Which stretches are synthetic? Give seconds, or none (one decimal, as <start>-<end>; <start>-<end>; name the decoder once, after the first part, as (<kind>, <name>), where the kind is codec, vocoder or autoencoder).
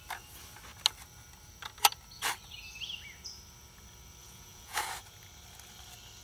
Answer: 4.2-4.8 (vocoder, Vocos)